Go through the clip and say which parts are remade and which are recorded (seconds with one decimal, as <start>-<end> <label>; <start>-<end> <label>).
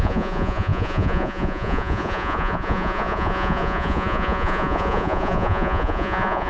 0.0-6.5 remade